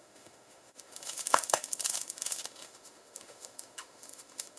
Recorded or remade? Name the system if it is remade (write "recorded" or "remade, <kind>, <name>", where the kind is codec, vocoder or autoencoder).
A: remade, autoencoder, DAC-VAE